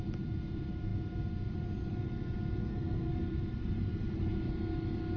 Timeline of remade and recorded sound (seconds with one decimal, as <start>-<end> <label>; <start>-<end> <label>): 0.0-2.6 recorded; 2.6-3.1 remade; 3.1-5.2 recorded